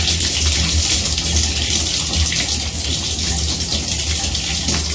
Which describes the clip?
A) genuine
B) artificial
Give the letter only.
A